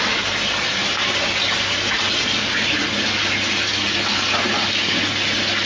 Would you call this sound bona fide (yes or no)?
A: yes